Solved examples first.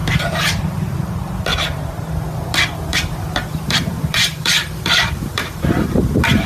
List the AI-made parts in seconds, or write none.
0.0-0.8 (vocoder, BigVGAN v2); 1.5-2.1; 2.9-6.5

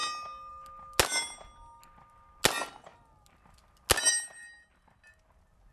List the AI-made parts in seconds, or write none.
none

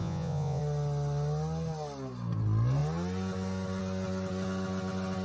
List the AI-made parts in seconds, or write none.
0.0-0.6 (vocoder, Vocos)

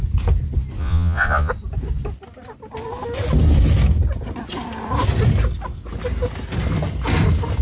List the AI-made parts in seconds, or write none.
0.8-1.5 (vocoder, Vocos)

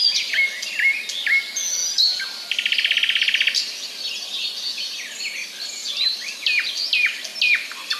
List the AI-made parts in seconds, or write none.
none

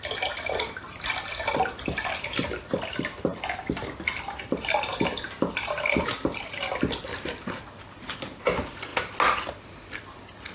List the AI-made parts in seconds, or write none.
0.0-3.3 (vocoder, BigVGAN v2); 4.4-8.9; 9.5-10.5